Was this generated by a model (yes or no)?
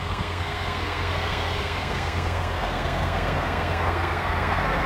yes